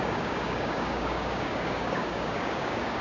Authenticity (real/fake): fake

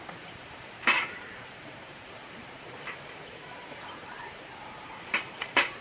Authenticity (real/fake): fake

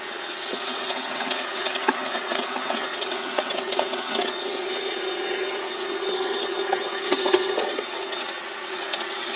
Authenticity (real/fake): fake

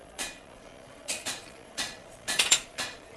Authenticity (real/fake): fake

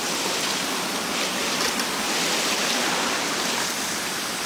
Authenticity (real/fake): real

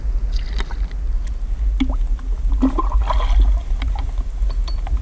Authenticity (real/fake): real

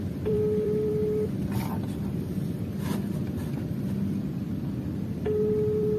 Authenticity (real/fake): fake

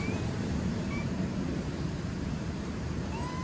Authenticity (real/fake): fake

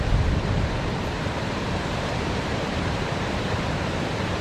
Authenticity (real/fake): fake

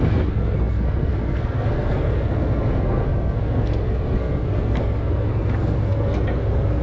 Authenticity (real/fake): fake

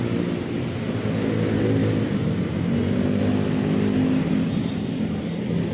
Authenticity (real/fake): real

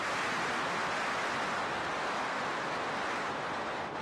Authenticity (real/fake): real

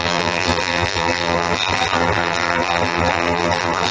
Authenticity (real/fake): fake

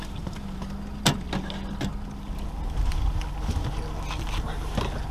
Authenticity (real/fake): real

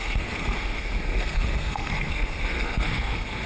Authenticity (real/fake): fake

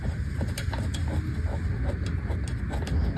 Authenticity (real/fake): real